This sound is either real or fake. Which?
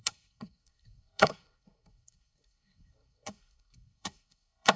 fake